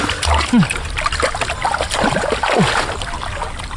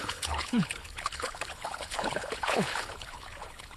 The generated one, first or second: second